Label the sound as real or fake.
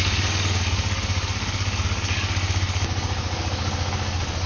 fake